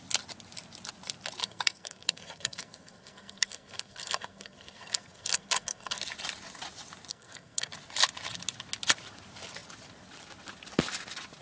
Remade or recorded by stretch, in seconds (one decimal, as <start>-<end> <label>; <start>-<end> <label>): 0.0-1.4 recorded; 1.4-6.0 remade; 6.0-7.1 recorded; 7.1-7.7 remade; 7.7-11.4 recorded